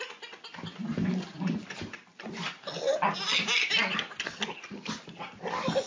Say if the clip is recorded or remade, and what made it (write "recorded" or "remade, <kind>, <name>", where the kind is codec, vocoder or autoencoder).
recorded